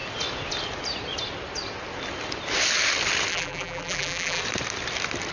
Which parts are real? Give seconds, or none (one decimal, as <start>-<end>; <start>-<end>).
0.0-3.3; 4.4-5.3